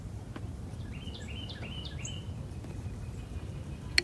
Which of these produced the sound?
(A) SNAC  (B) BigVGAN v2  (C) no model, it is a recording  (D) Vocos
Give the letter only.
C